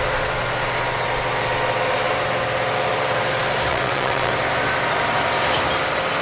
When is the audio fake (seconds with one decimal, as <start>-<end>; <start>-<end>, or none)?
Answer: 3.7-4.3